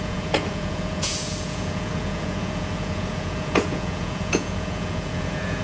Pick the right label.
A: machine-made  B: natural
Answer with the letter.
A